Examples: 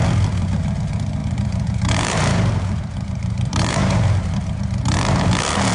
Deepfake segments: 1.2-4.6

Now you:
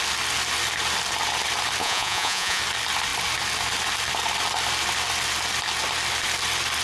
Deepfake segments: 1.8-2.6

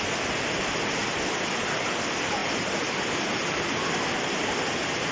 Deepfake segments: none

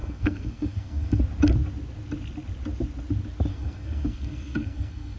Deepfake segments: 0.0-1.2; 3.5-5.2

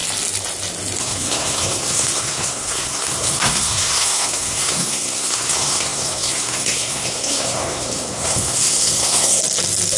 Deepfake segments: 1.0-9.4

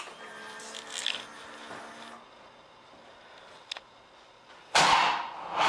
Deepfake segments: none